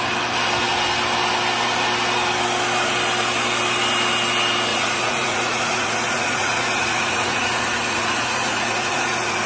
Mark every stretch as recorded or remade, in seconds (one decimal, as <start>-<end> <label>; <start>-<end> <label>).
0.0-4.7 recorded; 4.7-9.5 remade